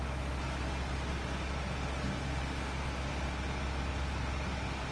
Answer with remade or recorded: recorded